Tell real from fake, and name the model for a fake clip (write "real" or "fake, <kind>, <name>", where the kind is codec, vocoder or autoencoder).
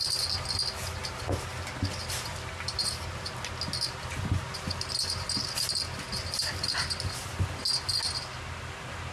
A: real